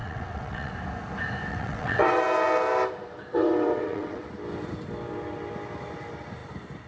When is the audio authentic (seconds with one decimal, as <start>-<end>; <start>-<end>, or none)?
0.7-1.5; 2.2-3.3; 4.2-6.9